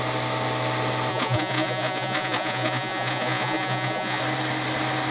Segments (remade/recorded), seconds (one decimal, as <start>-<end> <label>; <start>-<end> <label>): 0.0-1.1 recorded; 1.1-4.2 remade; 4.2-5.1 recorded